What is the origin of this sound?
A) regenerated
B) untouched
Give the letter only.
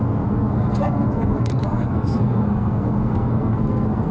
A